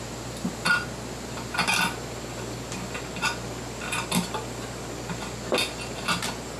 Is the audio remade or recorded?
recorded